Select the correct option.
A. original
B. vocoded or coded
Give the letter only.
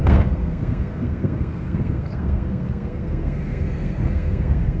B